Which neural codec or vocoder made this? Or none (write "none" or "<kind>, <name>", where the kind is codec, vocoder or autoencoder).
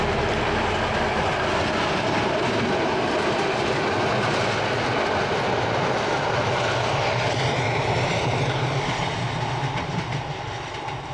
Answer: none